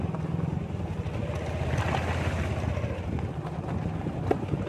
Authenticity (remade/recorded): recorded